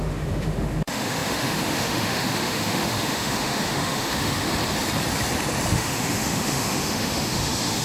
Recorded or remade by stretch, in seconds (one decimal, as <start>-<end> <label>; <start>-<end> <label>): 0.0-4.5 remade; 4.5-5.7 recorded; 5.7-7.8 remade